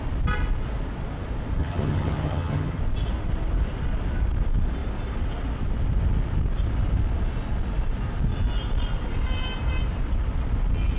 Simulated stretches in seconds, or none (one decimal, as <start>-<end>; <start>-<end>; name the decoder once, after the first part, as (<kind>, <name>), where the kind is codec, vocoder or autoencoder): 1.6-2.8 (vocoder, HiFi-GAN)